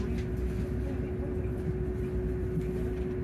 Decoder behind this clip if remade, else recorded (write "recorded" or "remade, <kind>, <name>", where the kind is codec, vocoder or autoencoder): recorded